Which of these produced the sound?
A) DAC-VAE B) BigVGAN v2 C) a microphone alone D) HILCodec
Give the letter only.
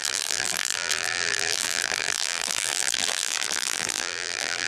B